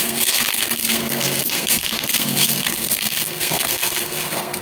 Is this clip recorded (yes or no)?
no